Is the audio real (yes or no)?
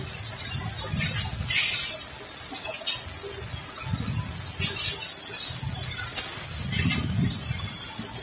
yes